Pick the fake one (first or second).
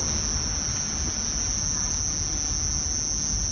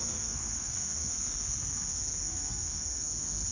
second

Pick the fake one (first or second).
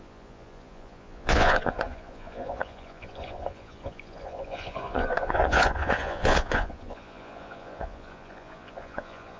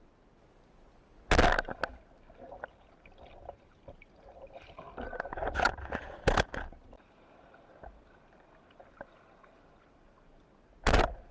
first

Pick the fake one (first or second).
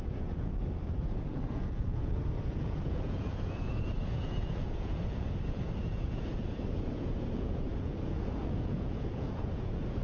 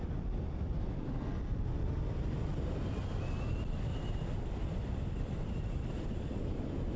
first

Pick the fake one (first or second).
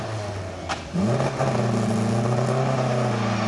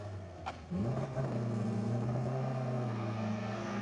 second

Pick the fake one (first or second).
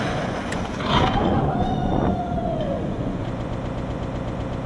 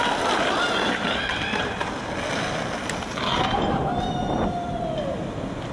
first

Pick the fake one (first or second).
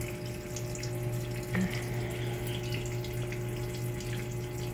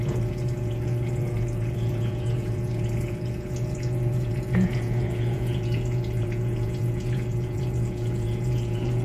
second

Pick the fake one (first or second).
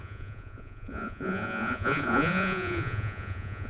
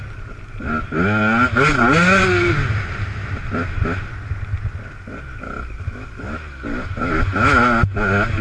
first